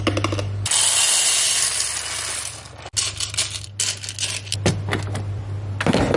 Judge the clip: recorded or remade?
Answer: recorded